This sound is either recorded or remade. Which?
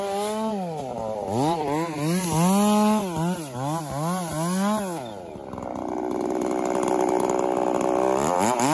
recorded